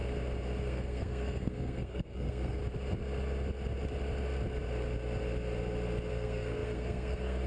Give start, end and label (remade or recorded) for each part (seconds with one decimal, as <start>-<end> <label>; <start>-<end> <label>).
0.0-0.6 recorded; 0.6-2.6 remade; 2.6-6.1 recorded; 6.1-7.5 remade